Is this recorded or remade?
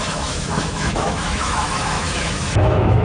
remade